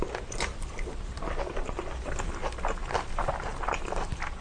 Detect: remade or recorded recorded